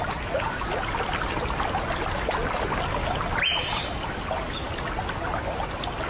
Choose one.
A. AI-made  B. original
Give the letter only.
B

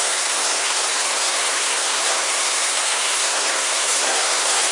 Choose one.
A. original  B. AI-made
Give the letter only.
B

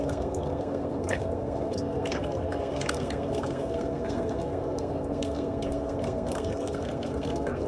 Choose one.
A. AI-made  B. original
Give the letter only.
A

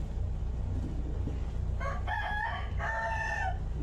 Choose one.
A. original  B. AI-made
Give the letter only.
A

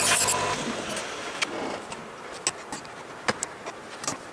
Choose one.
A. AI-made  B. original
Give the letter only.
B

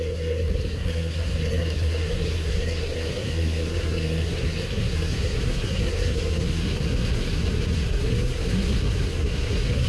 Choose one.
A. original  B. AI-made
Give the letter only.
B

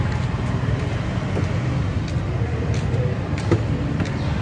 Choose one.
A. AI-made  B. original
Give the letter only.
B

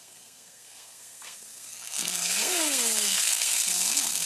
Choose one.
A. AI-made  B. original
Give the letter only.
A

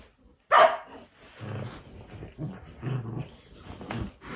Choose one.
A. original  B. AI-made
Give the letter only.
A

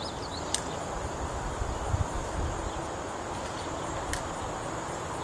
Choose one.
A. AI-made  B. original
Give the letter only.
B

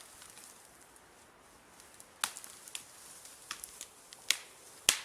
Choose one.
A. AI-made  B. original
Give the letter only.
B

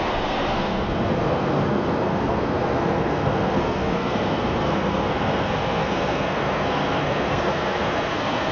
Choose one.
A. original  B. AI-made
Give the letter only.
B